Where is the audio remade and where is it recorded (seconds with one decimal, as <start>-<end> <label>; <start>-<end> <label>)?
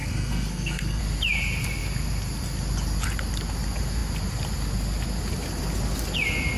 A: 0.0-1.0 remade; 1.0-6.6 recorded